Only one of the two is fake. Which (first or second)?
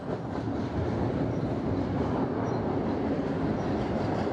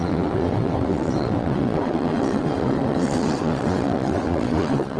second